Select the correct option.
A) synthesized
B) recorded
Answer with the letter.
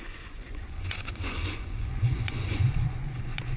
A